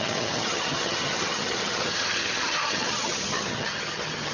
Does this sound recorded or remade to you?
remade